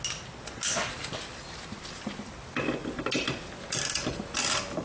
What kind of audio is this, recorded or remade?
recorded